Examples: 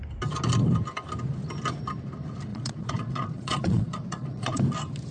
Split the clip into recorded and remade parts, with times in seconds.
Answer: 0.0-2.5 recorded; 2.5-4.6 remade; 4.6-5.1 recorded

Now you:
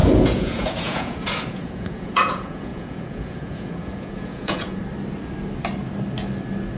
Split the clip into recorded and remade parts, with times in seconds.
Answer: 0.0-4.8 remade; 4.8-6.8 recorded

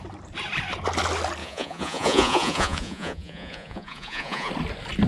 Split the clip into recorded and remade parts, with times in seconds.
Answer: 0.0-1.4 recorded; 1.4-4.5 remade; 4.5-5.1 recorded

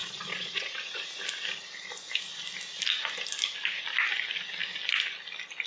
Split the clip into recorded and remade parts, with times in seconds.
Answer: 0.0-1.0 remade; 1.0-5.7 recorded